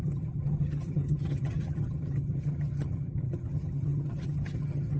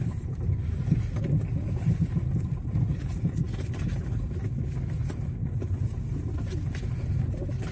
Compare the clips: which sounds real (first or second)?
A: second